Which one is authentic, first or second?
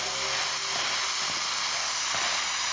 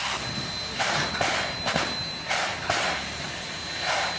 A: first